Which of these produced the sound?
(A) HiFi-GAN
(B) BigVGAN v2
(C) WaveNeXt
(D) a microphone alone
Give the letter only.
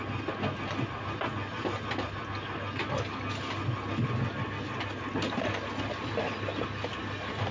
D